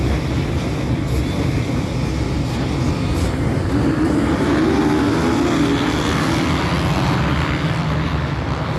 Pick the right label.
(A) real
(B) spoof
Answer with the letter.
A